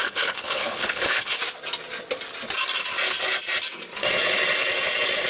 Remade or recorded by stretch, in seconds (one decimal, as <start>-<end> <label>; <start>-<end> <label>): 0.0-1.4 remade; 1.4-5.3 recorded